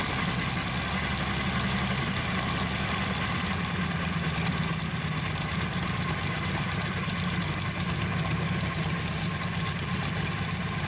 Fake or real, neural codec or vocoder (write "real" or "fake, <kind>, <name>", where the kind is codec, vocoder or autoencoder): real